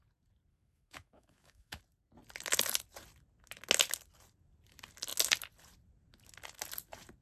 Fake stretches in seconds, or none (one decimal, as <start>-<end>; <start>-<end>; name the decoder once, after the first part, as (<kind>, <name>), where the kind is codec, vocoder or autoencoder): 0.5-1.8 (autoencoder, DAC-VAE)

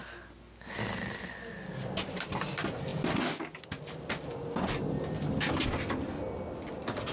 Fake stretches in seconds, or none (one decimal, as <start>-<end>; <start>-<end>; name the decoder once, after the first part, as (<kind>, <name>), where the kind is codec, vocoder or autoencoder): none